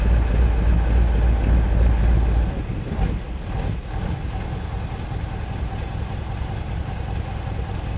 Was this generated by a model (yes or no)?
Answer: no